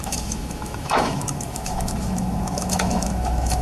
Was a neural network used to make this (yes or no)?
yes